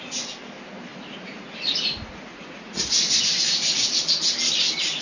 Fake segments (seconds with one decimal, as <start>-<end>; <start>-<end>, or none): 0.9-3.9